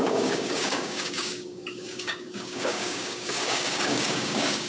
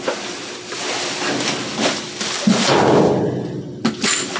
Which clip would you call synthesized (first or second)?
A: first